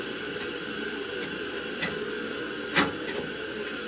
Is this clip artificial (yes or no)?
no